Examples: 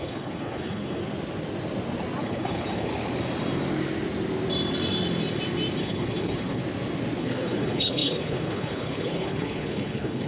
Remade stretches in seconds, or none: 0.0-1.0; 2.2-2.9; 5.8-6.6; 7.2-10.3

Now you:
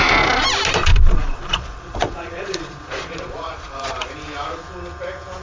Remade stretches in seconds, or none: 0.9-4.1

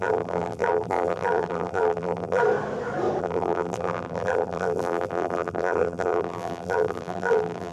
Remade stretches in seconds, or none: 0.0-2.4; 3.2-7.7

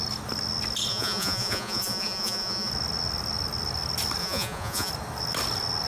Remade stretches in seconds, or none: 0.9-2.7; 4.2-4.9